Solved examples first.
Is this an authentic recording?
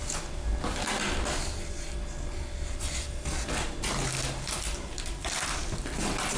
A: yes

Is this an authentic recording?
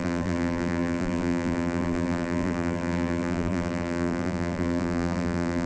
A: no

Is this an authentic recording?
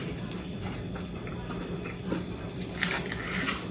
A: no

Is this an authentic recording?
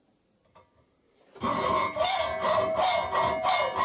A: yes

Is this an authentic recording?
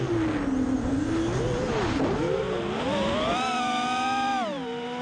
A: yes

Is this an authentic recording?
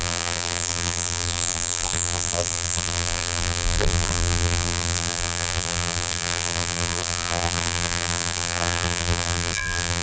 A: no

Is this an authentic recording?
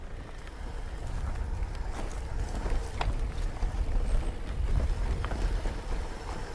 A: yes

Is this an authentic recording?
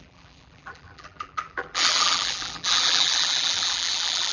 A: no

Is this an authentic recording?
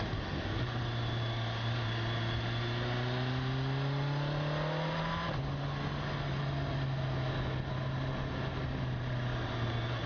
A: yes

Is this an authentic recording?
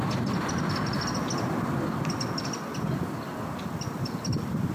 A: yes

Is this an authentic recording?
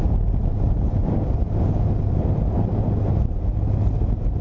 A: yes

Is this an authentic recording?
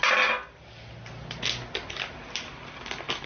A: yes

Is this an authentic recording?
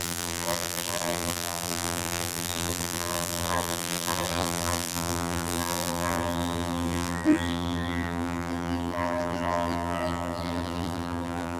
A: no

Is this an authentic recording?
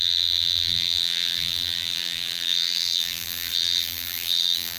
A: no